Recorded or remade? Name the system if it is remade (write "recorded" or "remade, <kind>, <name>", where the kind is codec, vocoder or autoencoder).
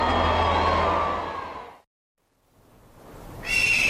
recorded